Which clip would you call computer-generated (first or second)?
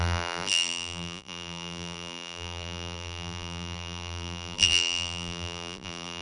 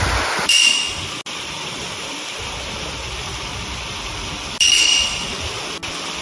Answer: first